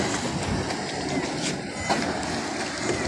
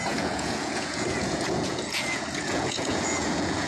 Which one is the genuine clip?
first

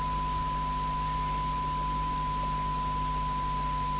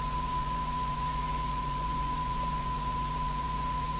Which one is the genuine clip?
first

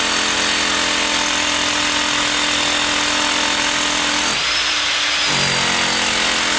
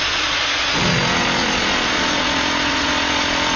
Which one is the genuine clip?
first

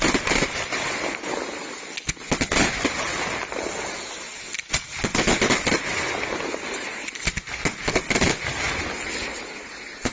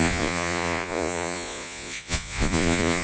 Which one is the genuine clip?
first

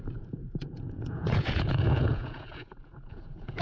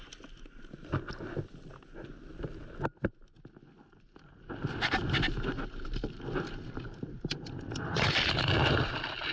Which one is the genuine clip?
second